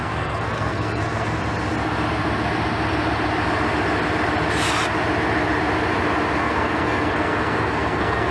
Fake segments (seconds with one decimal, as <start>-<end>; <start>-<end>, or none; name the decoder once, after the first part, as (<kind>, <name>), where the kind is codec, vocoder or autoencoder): 0.0-1.4 (codec, SNAC); 6.4-8.3